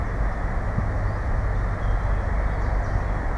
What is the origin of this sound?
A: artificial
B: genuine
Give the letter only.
B